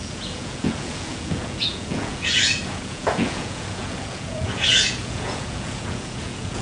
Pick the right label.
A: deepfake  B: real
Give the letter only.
A